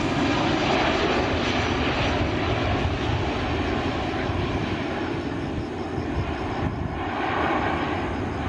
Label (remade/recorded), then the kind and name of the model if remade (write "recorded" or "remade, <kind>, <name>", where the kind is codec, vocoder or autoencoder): recorded